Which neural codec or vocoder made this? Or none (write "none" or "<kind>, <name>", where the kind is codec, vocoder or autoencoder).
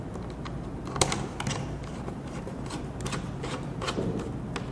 none